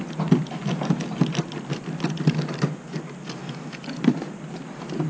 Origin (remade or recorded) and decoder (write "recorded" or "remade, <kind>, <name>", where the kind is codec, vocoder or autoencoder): recorded